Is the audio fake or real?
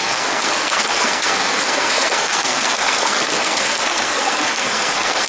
fake